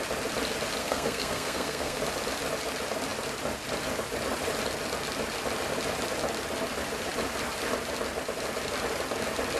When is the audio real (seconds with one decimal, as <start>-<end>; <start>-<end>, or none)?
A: 0.0-0.8; 2.0-9.6